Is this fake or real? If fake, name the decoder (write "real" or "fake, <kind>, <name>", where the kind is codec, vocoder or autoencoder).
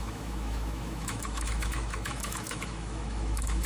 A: fake, autoencoder, DAC-VAE